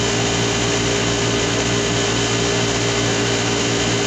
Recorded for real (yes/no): yes